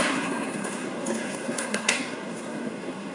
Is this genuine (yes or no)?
no